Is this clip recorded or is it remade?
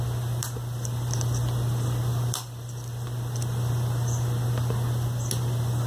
remade